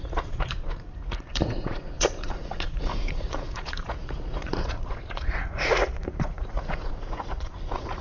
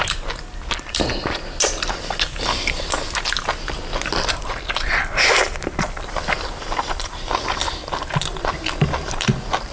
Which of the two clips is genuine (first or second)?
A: second